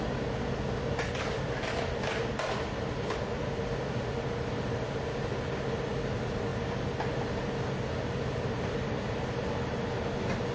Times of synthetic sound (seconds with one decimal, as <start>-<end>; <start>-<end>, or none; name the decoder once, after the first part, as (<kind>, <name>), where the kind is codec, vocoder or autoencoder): none